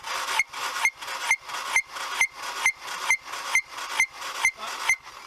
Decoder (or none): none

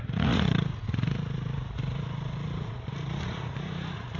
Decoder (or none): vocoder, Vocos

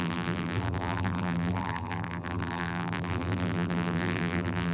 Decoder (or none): vocoder, BigVGAN v2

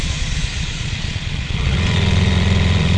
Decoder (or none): vocoder, Vocos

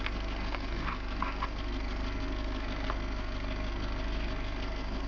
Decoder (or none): codec, SNAC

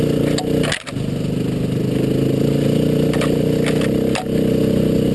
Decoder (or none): none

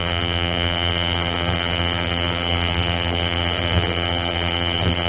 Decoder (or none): vocoder, BigVGAN v2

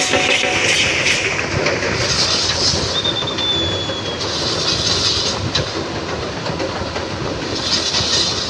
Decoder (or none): none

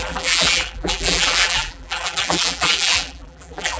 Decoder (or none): vocoder, BigVGAN v2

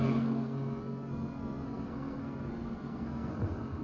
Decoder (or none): codec, SNAC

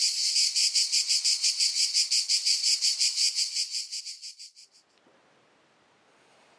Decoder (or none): none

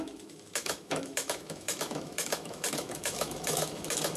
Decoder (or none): autoencoder, DAC-VAE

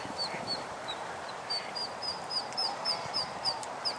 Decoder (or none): vocoder, BigVGAN v2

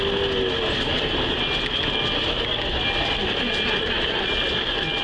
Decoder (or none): none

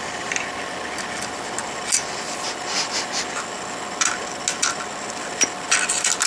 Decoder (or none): none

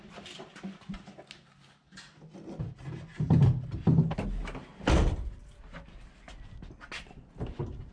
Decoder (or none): none